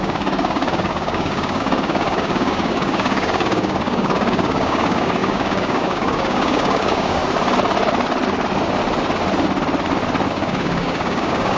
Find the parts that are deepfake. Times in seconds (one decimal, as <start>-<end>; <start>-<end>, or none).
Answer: 0.0-7.2; 10.3-11.6